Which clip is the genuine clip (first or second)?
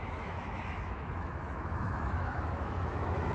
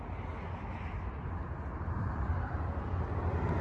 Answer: second